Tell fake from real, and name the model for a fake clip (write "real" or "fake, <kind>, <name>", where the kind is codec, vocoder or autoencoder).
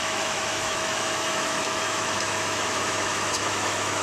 fake, autoencoder, DAC-VAE